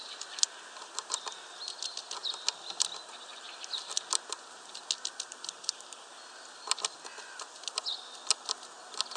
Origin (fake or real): real